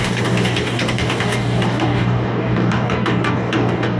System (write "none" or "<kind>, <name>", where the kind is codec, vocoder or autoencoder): codec, DAC